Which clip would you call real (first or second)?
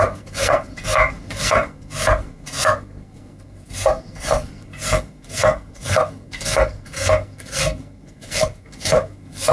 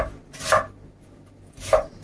second